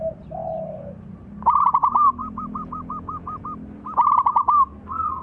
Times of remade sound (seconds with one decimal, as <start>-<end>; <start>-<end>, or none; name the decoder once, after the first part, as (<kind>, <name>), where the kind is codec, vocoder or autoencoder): 2.2-3.4 (vocoder, Vocos)